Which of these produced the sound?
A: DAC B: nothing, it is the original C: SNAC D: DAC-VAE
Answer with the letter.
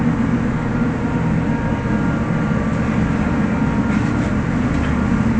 B